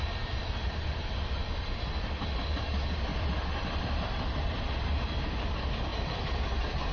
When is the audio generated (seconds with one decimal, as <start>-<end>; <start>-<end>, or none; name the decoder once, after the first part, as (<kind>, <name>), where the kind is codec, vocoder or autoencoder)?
3.1-5.2 (vocoder, BigVGAN v2); 5.9-6.9